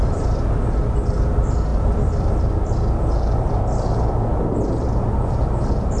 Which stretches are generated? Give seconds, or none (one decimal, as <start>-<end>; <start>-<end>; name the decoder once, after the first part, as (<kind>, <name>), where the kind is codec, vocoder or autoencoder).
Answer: none